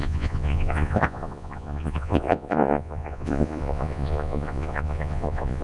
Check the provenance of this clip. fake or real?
fake